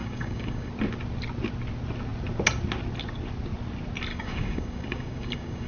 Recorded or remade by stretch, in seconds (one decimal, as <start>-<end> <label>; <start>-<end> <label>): 0.0-0.7 remade; 0.7-4.1 recorded; 4.1-5.7 remade